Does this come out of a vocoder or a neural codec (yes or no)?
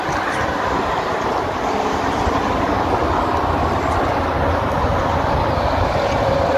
no